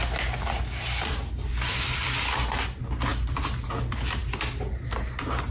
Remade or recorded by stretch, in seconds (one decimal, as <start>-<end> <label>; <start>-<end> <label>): 0.0-5.5 recorded

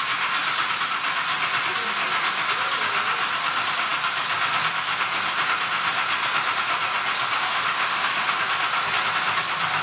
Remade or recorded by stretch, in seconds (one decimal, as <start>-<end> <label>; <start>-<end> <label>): 0.0-7.5 recorded; 7.5-8.4 remade; 8.4-9.8 recorded

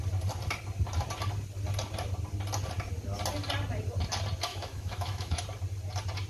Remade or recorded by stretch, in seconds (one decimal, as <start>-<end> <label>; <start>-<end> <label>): 0.0-4.5 recorded; 4.5-5.4 remade; 5.4-6.3 recorded

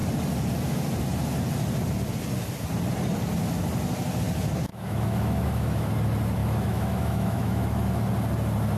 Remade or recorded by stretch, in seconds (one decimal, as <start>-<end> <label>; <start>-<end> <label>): 0.0-4.7 recorded; 4.7-5.9 remade; 5.9-6.4 recorded; 6.4-8.0 remade; 8.0-8.8 recorded

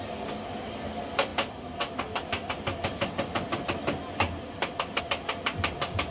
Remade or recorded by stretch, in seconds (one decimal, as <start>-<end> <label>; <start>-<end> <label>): 0.0-6.1 recorded